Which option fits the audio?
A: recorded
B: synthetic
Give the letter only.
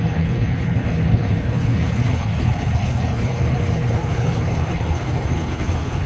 B